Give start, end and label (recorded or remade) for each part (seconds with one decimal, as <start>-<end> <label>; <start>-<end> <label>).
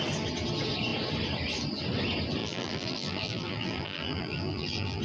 0.0-2.4 recorded; 2.4-5.0 remade